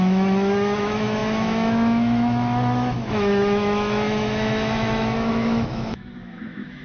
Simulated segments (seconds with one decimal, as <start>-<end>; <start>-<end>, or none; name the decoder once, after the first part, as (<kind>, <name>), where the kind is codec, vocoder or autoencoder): 0.0-6.8 (autoencoder, DAC-VAE)